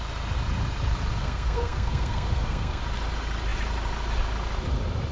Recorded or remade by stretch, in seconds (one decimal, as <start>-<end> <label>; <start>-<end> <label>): 0.0-1.2 recorded; 1.2-2.8 remade; 2.8-5.1 recorded